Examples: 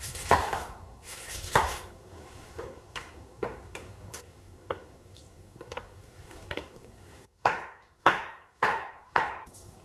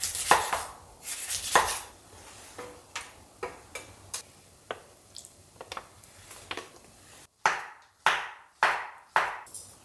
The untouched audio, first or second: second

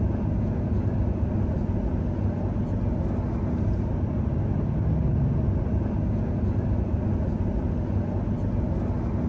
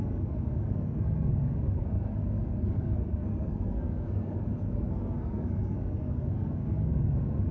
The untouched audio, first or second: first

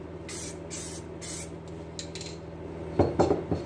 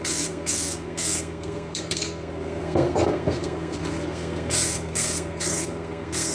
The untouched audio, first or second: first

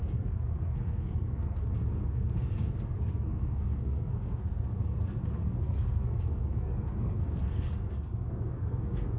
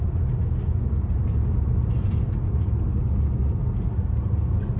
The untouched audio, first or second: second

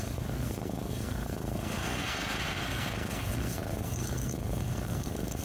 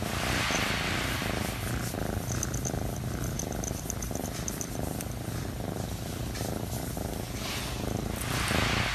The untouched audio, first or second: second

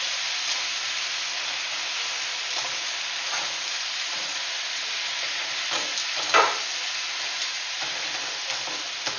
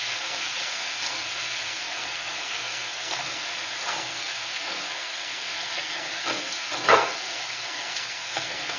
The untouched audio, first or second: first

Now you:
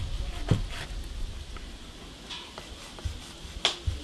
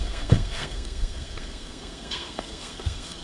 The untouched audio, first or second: first